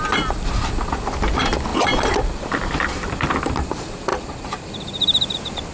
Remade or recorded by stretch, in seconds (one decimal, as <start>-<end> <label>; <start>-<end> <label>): 0.0-4.1 recorded; 4.1-4.7 remade; 4.7-5.7 recorded